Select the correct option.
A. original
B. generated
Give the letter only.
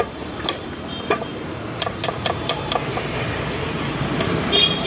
B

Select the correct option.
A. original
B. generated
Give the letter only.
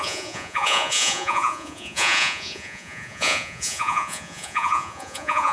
B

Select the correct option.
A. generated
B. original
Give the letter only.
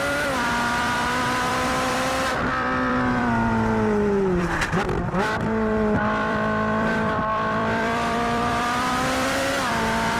A